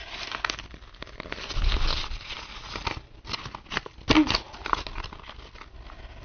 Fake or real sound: real